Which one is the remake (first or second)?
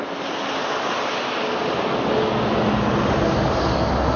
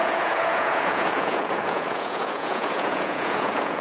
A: second